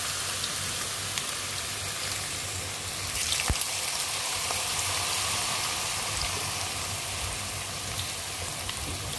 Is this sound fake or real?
real